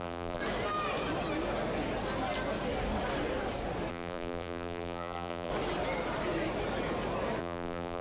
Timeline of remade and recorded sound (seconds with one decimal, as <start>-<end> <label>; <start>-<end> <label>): 0.0-0.4 remade; 0.4-3.9 recorded; 3.9-5.5 remade; 5.5-7.4 recorded; 7.4-8.0 remade